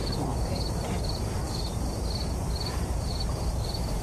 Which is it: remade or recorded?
remade